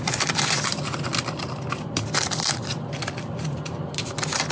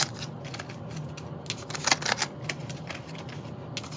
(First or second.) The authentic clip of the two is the second